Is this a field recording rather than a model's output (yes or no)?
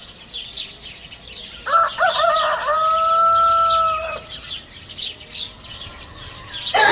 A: yes